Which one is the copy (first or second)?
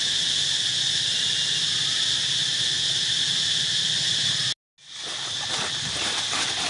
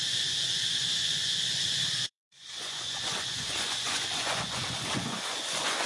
second